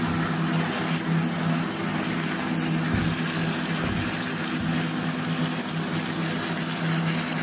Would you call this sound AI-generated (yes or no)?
no